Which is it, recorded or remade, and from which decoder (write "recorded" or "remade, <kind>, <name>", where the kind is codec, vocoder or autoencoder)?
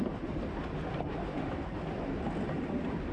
recorded